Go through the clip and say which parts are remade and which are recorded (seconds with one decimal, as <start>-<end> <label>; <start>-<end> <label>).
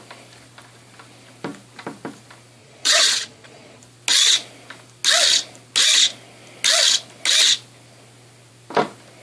0.0-2.6 recorded; 2.6-3.8 remade; 3.8-9.2 recorded